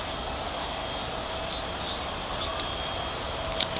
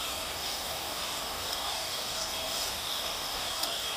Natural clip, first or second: first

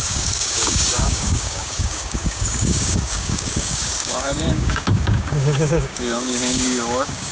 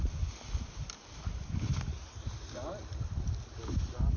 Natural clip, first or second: second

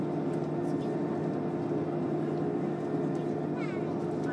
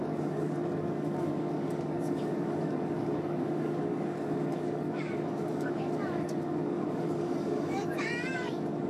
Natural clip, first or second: first